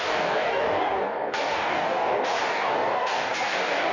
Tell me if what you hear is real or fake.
fake